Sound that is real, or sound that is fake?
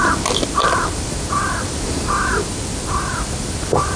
real